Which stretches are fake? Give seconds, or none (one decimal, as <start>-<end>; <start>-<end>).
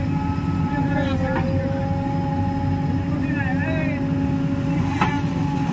none